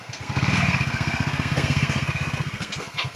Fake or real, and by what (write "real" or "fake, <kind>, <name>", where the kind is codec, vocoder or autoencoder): fake, codec, SNAC